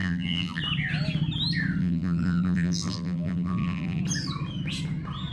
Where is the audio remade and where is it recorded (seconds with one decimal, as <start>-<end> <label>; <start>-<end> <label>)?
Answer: 0.0-0.6 remade; 0.6-1.8 recorded; 1.8-4.0 remade; 4.0-5.3 recorded

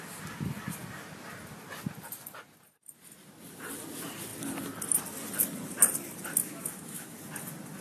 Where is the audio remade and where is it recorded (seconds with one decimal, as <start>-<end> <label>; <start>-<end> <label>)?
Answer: 0.0-6.4 recorded; 6.4-7.2 remade; 7.2-7.8 recorded

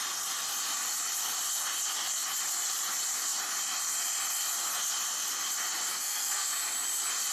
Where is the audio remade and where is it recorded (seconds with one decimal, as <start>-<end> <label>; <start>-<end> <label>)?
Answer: 0.0-5.9 recorded; 5.9-6.5 remade; 6.5-7.3 recorded

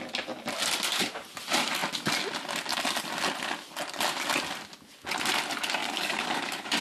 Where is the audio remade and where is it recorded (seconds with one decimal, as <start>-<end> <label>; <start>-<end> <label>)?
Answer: 0.0-5.8 recorded; 5.8-6.8 remade

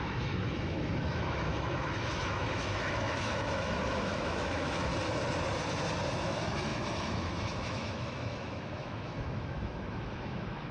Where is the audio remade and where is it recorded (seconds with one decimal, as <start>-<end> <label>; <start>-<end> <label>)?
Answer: 0.0-4.9 remade; 4.9-6.1 recorded; 6.1-10.7 remade